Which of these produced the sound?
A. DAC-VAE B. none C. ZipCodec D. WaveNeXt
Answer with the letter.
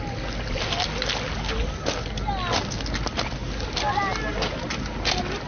B